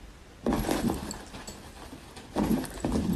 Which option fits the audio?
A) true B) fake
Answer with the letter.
B